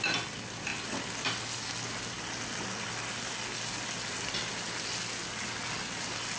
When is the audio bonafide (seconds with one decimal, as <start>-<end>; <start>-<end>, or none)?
0.0-6.4